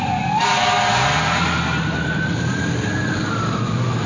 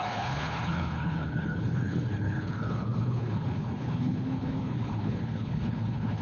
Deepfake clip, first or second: second